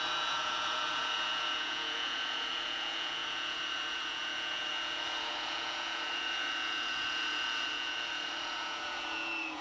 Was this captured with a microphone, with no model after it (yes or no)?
no